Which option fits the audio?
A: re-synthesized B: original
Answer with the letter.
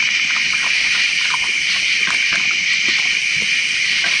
B